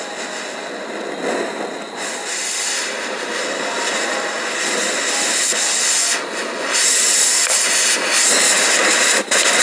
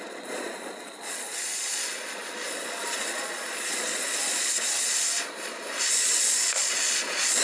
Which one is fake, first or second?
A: second